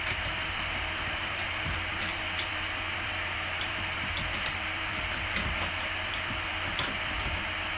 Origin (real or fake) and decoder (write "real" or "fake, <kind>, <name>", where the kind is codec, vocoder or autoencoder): fake, vocoder, BigVGAN v2